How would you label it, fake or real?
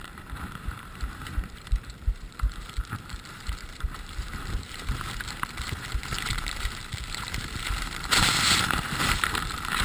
fake